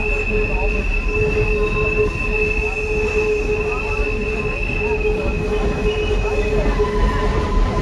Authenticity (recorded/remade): recorded